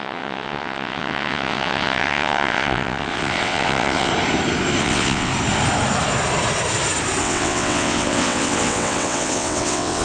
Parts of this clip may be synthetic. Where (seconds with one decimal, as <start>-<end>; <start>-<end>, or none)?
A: 0.0-4.1; 4.8-5.3; 7.2-10.0